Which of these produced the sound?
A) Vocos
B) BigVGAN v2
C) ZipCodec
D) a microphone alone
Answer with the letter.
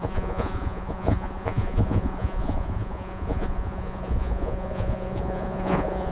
A